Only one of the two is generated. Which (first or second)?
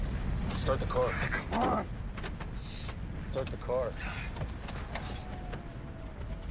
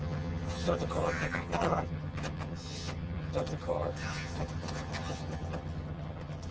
second